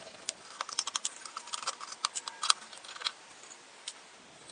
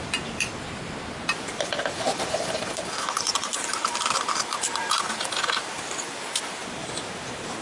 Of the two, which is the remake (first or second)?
second